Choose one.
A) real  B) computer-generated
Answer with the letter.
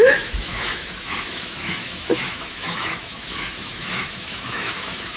B